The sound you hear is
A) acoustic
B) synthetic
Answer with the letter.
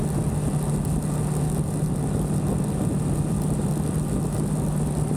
A